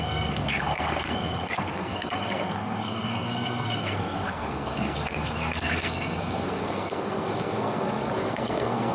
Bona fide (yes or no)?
no